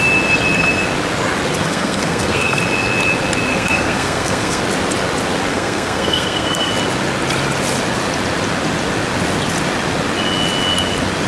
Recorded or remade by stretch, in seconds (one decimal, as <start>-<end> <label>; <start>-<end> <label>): 0.0-1.6 recorded; 1.6-2.6 remade; 2.6-3.5 recorded; 3.5-4.6 remade; 4.6-5.5 recorded; 5.5-6.7 remade; 6.7-11.3 recorded